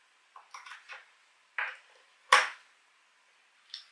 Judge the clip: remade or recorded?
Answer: recorded